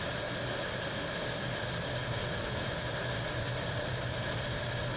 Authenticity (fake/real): real